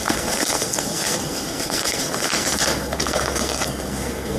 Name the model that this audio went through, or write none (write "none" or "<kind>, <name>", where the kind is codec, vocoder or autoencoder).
codec, SNAC